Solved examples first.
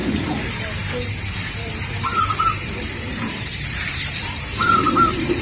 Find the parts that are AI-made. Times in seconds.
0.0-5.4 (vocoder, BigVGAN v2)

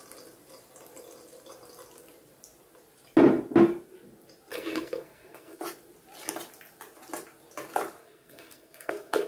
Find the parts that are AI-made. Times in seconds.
4.5-5.6 (codec, SNAC); 8.0-9.3